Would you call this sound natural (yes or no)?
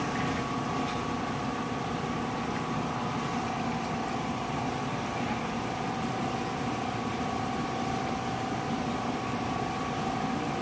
yes